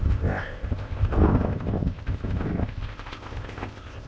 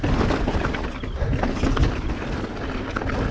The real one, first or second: second